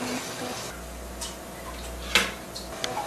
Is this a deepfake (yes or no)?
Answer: no